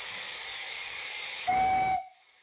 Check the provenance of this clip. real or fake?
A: fake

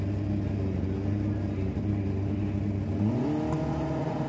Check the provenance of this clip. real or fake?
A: real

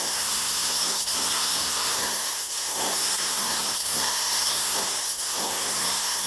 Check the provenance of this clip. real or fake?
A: fake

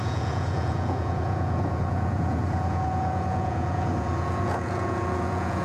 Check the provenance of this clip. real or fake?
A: fake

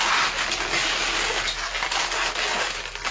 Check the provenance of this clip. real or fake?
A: real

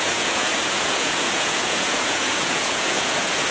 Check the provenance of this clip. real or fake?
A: fake